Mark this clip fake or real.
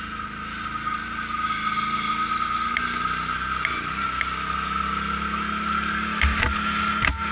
real